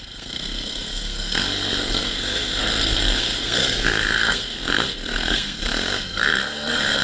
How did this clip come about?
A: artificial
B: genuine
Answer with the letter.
A